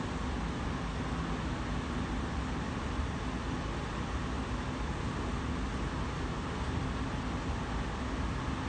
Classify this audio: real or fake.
real